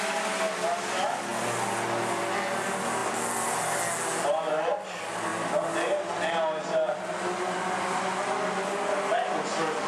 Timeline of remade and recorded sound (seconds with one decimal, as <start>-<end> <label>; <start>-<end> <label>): 0.0-9.9 recorded